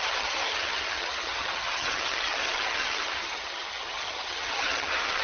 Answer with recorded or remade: remade